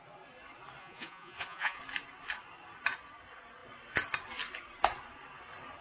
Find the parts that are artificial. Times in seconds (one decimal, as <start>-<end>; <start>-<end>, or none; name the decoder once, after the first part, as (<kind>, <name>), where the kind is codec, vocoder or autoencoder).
0.8-1.8 (vocoder, Vocos)

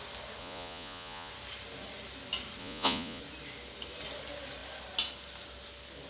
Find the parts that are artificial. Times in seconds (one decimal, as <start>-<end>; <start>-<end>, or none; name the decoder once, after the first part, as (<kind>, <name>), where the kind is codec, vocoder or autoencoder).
0.4-1.3 (vocoder, Vocos); 2.6-3.2